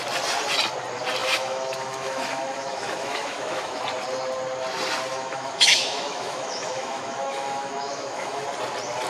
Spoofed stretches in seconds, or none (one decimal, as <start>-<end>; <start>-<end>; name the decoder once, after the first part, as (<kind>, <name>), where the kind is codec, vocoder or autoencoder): 1.2-3.8 (autoencoder, DAC-VAE); 5.1-8.4